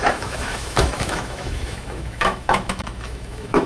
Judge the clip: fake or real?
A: fake